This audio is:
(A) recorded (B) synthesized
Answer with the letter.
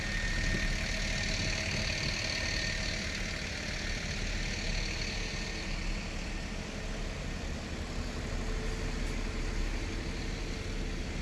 A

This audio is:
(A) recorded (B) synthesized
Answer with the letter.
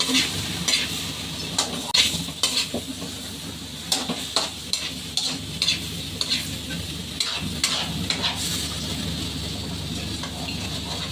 A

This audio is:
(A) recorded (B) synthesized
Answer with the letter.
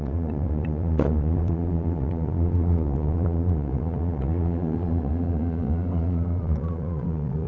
B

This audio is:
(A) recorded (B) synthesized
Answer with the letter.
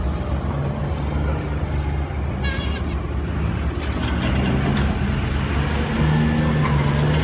A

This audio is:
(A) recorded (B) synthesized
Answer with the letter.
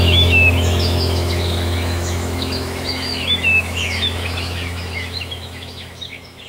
B